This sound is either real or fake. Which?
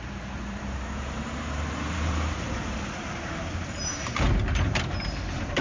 fake